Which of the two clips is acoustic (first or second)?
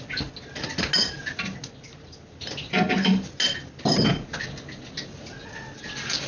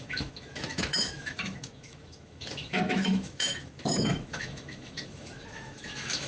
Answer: first